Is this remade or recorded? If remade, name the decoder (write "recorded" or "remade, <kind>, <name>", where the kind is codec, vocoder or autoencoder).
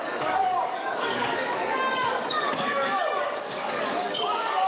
remade, codec, DAC